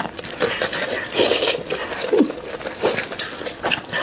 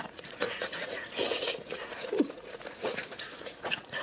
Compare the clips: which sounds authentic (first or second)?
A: first